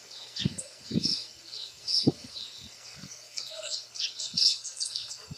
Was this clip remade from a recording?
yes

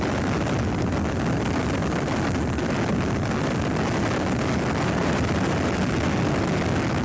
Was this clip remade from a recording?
no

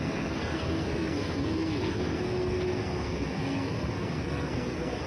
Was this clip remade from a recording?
yes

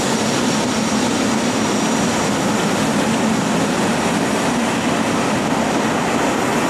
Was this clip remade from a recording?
no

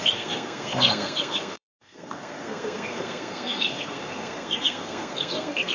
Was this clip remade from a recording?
yes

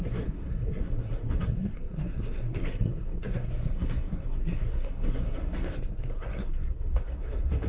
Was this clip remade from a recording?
yes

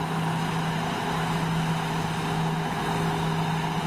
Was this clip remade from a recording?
no